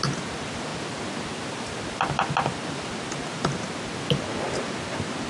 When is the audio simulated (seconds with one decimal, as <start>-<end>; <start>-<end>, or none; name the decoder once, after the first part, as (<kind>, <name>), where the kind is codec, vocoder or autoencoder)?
none

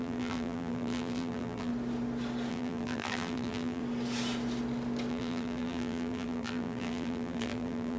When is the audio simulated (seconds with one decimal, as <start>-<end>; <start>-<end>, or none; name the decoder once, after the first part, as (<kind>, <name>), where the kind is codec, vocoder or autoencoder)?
0.0-1.7 (vocoder, BigVGAN v2); 2.5-3.8; 5.1-8.0

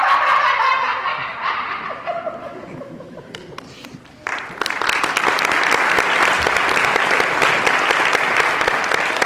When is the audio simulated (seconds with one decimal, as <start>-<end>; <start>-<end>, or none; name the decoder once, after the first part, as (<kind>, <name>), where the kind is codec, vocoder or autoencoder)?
2.4-3.3 (autoencoder, DAC-VAE)

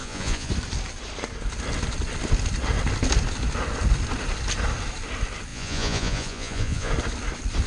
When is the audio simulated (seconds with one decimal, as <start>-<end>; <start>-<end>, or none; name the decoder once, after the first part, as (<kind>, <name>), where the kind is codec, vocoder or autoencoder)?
0.0-0.5 (vocoder, Vocos); 5.5-6.9

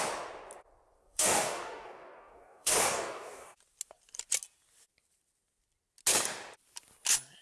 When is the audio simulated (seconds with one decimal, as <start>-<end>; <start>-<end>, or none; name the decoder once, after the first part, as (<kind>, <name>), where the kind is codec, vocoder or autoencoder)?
1.0-3.6 (codec, DAC)

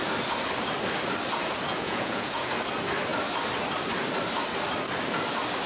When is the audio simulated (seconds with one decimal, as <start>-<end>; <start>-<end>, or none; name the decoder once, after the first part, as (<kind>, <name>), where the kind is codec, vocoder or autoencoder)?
1.7-2.5 (vocoder, Vocos)

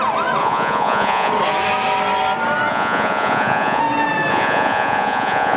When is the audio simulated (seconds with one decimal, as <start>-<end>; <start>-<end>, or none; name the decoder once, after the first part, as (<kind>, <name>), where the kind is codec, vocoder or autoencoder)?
0.4-1.3 (vocoder, Vocos); 2.7-3.8; 4.3-5.6